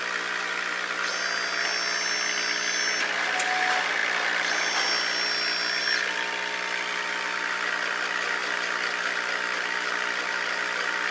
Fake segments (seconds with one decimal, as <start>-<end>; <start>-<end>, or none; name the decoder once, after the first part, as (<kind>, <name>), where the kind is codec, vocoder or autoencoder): none

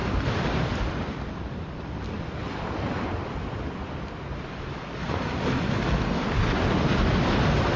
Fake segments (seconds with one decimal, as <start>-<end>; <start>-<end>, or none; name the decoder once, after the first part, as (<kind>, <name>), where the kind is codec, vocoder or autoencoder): none

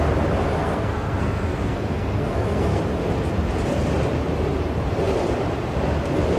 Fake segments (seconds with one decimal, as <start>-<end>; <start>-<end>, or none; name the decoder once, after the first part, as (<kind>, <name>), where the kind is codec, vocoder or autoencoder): 0.6-2.8 (codec, SNAC)

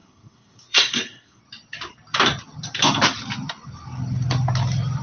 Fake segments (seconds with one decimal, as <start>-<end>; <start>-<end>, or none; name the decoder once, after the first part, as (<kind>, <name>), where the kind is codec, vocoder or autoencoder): 0.0-1.4 (codec, SNAC)

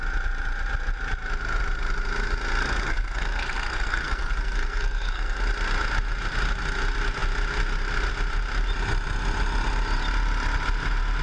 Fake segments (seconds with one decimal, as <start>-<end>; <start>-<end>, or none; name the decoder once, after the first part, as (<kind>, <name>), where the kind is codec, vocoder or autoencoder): 2.6-5.4 (codec, SNAC)